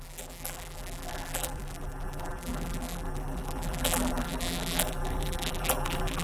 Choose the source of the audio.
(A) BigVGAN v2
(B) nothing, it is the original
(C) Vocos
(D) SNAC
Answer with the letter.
A